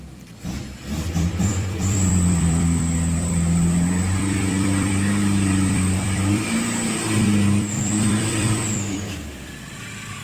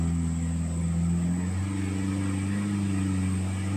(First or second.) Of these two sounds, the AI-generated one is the first